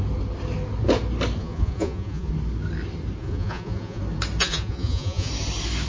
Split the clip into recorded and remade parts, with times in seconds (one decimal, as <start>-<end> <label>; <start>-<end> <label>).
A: 0.0-1.4 recorded; 1.4-2.3 remade; 2.3-3.2 recorded; 3.2-4.0 remade; 4.0-4.4 recorded; 4.4-5.3 remade; 5.3-5.9 recorded